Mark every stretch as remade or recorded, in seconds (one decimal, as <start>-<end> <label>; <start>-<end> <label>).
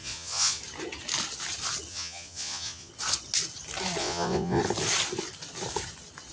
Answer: 0.0-0.6 remade; 0.6-1.9 recorded; 1.9-2.9 remade; 2.9-4.0 recorded; 4.0-4.6 remade; 4.6-6.3 recorded